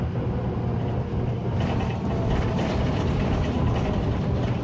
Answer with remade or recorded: recorded